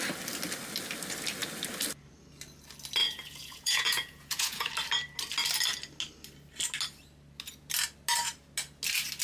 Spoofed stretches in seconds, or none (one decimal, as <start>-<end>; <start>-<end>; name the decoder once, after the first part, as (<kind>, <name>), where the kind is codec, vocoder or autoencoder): 3.0-4.7 (vocoder, Vocos)